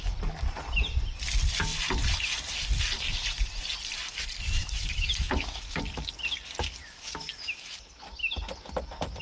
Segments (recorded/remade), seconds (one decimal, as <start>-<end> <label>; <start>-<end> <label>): 0.0-4.6 recorded; 4.6-5.8 remade; 5.8-6.8 recorded; 6.8-7.8 remade; 7.8-9.2 recorded